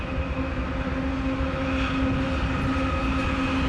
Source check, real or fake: real